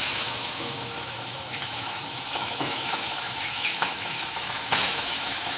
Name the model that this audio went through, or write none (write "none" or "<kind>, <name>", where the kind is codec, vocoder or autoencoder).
autoencoder, DAC-VAE